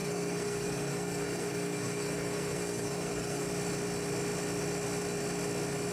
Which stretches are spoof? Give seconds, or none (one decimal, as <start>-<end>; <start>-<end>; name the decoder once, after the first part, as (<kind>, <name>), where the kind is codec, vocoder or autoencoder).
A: 0.0-3.5 (codec, SNAC)